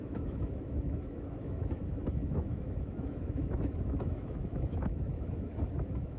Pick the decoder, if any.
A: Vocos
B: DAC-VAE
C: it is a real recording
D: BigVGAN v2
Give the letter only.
B